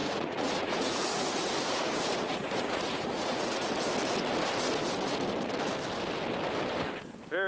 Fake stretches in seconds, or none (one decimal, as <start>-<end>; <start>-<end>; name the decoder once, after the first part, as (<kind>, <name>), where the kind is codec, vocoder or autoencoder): 0.0-3.7 (vocoder, Vocos)